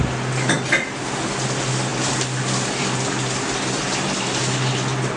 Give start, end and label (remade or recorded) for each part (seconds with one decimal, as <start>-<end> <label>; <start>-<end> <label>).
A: 0.0-5.2 recorded